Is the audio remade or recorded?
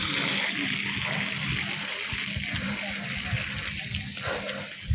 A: recorded